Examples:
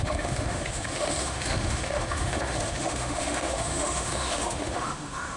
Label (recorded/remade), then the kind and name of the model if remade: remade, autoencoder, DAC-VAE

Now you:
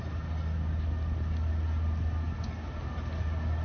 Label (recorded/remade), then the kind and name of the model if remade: recorded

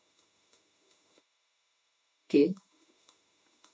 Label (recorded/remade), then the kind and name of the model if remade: remade, autoencoder, DAC-VAE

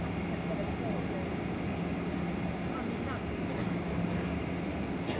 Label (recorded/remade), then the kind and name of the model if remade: recorded